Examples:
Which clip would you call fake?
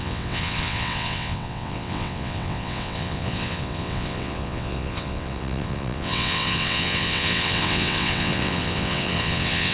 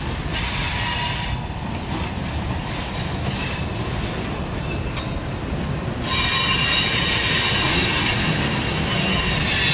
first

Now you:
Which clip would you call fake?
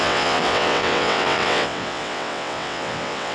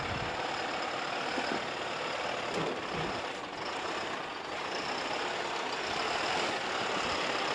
first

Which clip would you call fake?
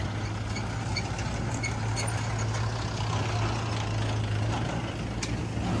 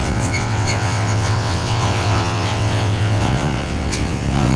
second